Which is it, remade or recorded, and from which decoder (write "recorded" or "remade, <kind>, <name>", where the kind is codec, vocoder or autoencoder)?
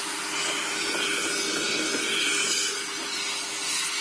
recorded